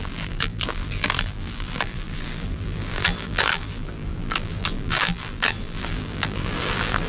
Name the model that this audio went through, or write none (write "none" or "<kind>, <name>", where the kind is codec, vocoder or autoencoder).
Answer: vocoder, BigVGAN v2